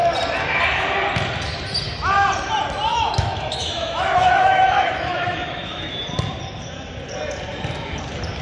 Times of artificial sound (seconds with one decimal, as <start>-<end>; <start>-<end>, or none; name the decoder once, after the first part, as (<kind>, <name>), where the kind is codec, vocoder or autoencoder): 2.9-6.0 (autoencoder, DAC-VAE)

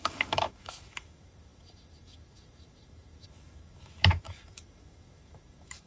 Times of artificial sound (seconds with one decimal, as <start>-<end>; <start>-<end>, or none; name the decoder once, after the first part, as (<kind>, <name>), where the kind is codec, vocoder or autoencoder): 0.0-5.9 (autoencoder, DAC-VAE)

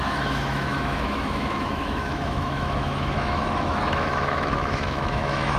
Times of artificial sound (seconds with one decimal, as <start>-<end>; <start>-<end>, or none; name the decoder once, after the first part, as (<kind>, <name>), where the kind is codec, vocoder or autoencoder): 0.0-5.6 (autoencoder, DAC-VAE)

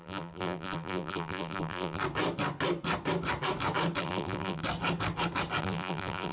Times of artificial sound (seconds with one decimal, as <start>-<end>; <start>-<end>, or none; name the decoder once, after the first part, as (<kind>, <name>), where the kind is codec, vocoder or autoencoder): 0.0-2.0 (vocoder, BigVGAN v2); 4.0-4.6; 5.6-6.3

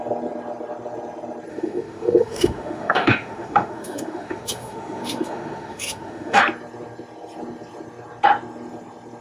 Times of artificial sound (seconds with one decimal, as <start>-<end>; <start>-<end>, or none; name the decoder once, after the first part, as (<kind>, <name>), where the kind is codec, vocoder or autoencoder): 1.5-6.4 (autoencoder, DAC-VAE)

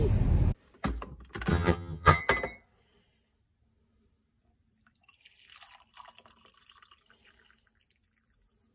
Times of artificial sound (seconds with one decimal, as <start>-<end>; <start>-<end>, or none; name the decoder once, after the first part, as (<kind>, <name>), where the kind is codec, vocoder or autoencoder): 1.5-2.2 (vocoder, HiFi-GAN)

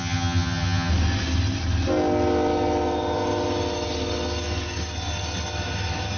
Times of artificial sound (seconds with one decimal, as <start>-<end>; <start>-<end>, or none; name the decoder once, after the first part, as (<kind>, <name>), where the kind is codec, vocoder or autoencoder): 0.0-0.9 (vocoder, HiFi-GAN)

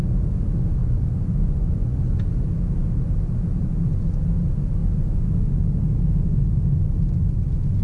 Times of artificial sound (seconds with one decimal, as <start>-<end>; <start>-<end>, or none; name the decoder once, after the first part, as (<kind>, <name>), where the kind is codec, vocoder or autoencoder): 0.8-2.0 (vocoder, Vocos)